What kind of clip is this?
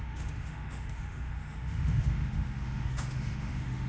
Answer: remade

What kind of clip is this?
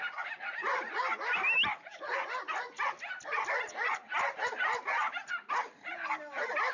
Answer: recorded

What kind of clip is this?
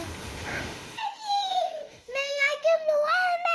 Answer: remade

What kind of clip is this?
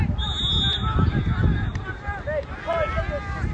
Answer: recorded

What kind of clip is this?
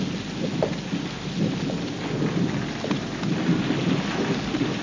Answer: recorded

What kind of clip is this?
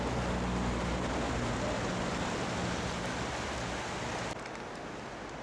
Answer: recorded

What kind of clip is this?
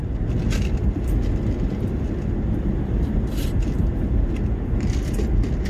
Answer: recorded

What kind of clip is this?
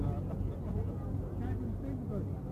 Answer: recorded